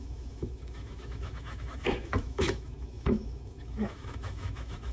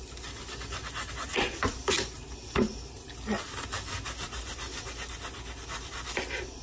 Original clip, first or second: second